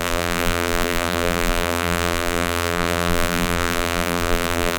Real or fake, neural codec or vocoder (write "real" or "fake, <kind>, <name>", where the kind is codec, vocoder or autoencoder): fake, vocoder, BigVGAN v2